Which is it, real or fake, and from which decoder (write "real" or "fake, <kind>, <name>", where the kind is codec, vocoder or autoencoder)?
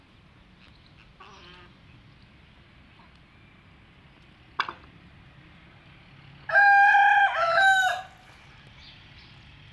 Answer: real